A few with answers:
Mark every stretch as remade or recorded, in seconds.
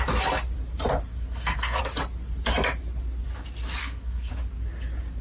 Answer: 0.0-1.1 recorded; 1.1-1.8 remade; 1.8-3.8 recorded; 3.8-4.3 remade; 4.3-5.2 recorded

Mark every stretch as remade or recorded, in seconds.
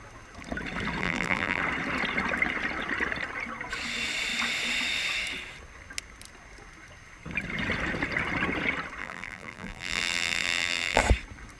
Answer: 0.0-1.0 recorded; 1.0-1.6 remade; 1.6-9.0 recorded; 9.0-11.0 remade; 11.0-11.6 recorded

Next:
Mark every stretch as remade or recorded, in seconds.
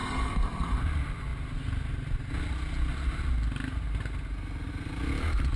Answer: 0.0-0.8 remade; 0.8-5.6 recorded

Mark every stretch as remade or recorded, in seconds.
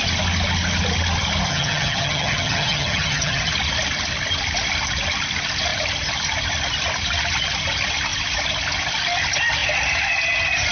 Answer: 0.0-1.5 recorded; 1.5-3.5 remade; 3.5-10.7 recorded